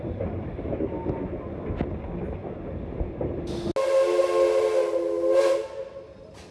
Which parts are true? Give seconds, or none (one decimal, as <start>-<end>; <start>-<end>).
0.0-2.4; 3.3-6.5